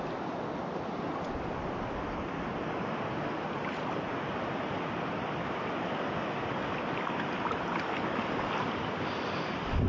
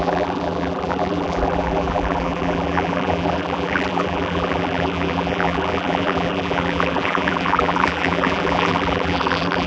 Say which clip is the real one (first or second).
first